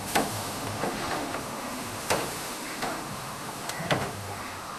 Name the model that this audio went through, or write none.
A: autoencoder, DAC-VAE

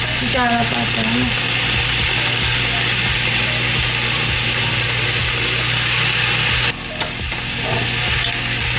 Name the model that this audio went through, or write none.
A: none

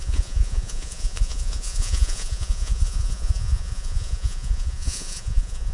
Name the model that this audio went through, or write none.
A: vocoder, Vocos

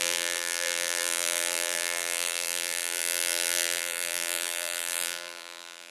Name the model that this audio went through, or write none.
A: vocoder, BigVGAN v2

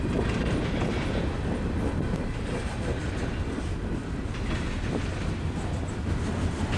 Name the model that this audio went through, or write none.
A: none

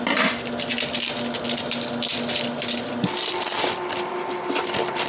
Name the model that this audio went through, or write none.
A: none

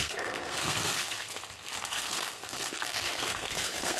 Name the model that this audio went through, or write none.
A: codec, SNAC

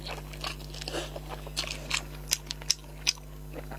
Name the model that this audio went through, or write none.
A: none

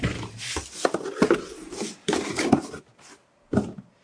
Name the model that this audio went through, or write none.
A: none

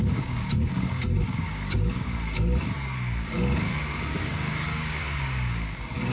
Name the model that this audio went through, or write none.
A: codec, DAC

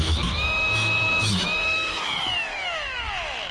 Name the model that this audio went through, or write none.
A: autoencoder, DAC-VAE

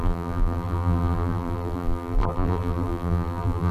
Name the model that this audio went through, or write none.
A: vocoder, BigVGAN v2